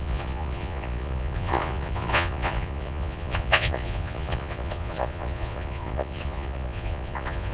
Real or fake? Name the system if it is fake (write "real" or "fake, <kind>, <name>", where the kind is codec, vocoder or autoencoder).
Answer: fake, vocoder, Vocos